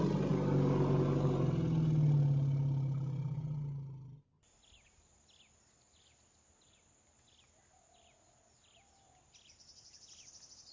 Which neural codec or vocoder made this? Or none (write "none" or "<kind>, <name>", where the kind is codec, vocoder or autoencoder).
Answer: none